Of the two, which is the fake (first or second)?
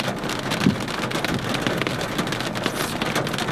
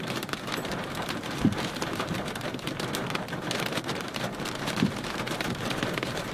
second